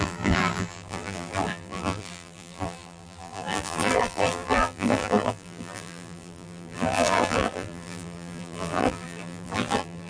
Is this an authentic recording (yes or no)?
no